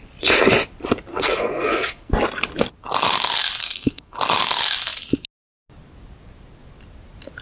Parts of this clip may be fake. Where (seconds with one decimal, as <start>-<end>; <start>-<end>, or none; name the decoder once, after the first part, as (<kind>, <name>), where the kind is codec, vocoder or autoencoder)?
1.1-2.1 (codec, SNAC); 3.6-4.2